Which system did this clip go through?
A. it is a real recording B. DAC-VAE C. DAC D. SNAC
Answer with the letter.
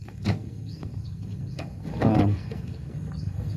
D